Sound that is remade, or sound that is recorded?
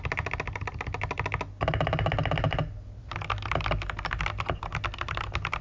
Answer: recorded